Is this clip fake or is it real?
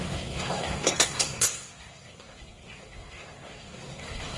fake